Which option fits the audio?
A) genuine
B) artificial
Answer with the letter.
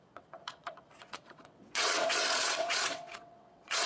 B